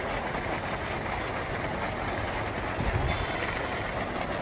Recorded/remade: recorded